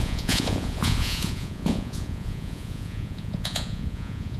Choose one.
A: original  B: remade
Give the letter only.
B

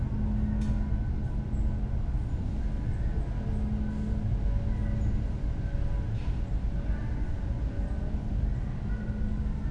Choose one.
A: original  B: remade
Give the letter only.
A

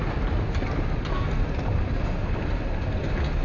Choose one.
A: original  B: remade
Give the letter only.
A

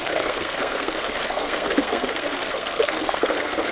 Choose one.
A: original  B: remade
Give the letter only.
B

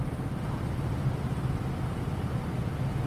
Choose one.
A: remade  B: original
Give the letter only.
B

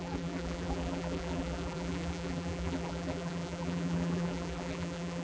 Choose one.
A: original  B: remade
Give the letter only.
B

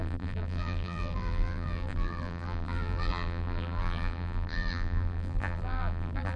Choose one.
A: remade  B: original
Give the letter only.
A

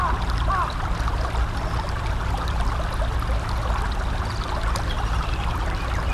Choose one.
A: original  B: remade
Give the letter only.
A